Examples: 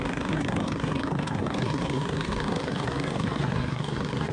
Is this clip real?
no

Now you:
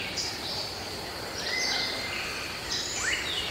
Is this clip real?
no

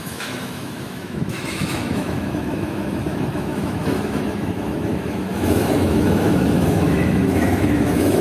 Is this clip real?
no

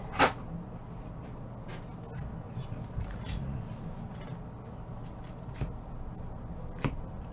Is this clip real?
yes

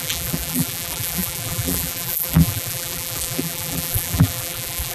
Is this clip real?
no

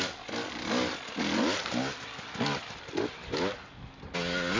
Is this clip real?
yes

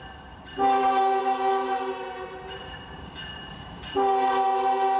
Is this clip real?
no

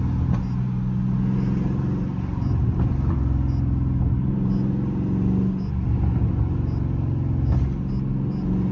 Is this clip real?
yes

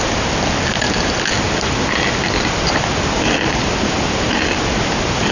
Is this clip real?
yes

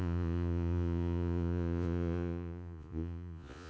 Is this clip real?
no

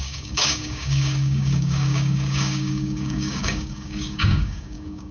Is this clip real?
no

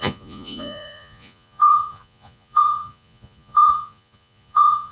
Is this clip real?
no